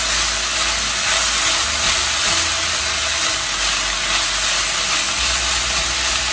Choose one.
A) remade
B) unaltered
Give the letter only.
B